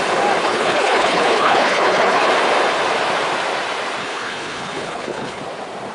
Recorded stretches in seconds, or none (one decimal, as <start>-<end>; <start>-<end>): 0.0-0.4; 2.3-4.0; 5.4-5.9